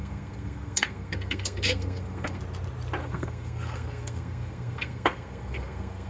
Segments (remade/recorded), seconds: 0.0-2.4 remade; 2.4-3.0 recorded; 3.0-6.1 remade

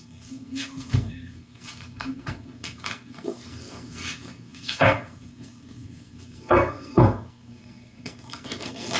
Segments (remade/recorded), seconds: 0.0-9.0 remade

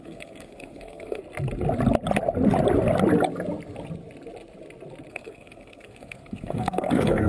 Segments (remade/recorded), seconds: 0.0-1.2 remade; 1.2-5.1 recorded; 5.1-7.3 remade

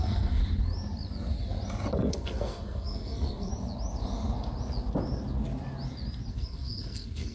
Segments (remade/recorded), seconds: 0.0-0.4 remade; 0.4-2.1 recorded; 2.1-3.5 remade; 3.5-6.3 recorded; 6.3-7.3 remade